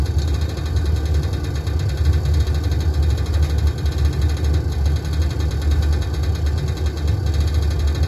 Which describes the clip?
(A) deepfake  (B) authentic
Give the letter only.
B